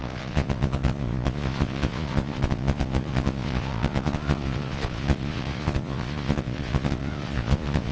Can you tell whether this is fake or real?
fake